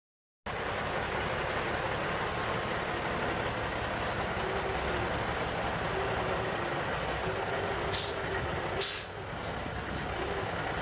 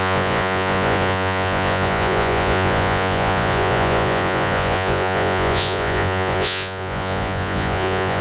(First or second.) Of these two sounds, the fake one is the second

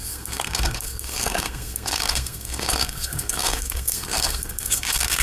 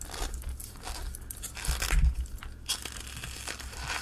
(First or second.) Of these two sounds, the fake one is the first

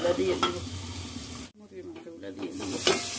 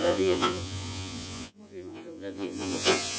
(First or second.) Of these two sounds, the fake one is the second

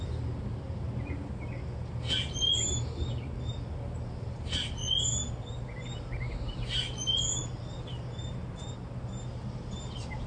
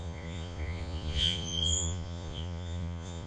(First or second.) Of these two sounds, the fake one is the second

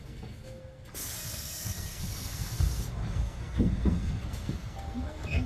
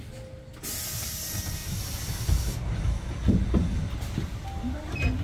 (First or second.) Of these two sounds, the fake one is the first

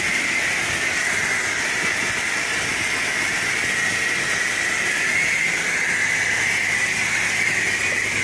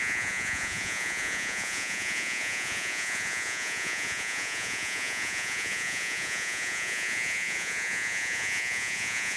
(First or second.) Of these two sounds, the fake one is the second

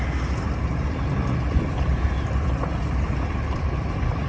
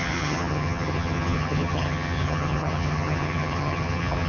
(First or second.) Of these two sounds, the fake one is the second